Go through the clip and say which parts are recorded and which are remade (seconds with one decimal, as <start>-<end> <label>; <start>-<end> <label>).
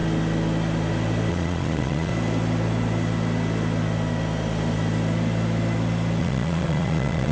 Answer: 0.0-1.3 recorded; 1.3-2.1 remade; 2.1-6.2 recorded; 6.2-7.3 remade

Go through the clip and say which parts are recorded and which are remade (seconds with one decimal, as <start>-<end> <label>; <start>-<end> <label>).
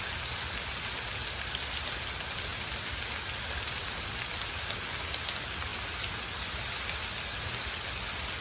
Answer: 0.0-8.4 recorded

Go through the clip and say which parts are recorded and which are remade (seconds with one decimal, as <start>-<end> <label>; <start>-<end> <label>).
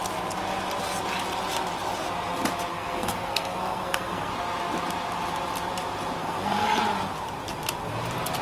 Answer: 0.0-2.7 recorded; 2.7-4.3 remade; 4.3-6.2 recorded; 6.2-6.8 remade; 6.8-8.4 recorded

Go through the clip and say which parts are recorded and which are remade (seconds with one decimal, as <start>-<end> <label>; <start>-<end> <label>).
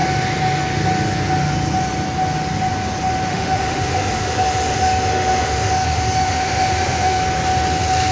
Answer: 0.0-3.3 recorded; 3.3-7.2 remade; 7.2-8.1 recorded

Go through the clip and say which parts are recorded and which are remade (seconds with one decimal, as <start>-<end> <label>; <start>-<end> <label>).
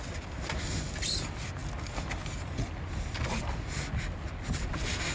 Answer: 0.0-5.1 recorded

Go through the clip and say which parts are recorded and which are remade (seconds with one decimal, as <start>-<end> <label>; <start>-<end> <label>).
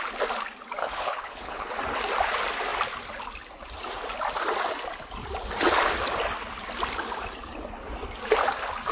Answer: 0.0-0.8 recorded; 0.8-1.7 remade; 1.7-8.9 recorded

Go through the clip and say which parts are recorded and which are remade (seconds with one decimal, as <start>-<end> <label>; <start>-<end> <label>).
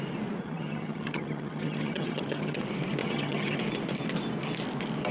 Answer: 0.0-0.4 recorded; 0.4-2.6 remade; 2.6-3.0 recorded; 3.0-3.6 remade; 3.6-5.1 recorded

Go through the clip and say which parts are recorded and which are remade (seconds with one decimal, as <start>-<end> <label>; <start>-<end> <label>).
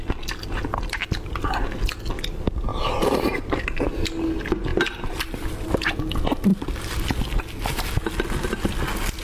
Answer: 0.0-2.7 recorded; 2.7-3.8 remade; 3.8-4.7 recorded; 4.7-6.0 remade; 6.0-9.2 recorded